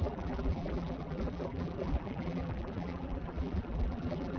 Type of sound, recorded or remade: remade